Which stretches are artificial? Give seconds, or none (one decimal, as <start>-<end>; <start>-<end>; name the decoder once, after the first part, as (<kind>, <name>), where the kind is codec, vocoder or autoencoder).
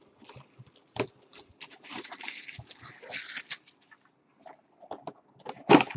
1.3-4.9 (vocoder, BigVGAN v2)